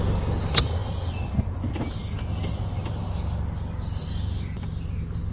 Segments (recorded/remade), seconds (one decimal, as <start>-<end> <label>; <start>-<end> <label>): 0.0-5.3 recorded